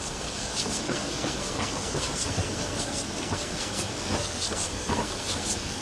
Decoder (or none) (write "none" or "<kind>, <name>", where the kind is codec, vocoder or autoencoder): codec, SNAC